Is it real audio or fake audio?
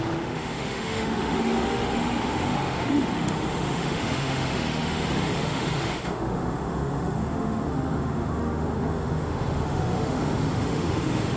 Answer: fake